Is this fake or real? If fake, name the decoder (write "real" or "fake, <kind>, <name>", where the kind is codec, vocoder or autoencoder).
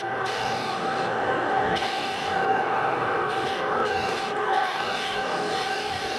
fake, codec, DAC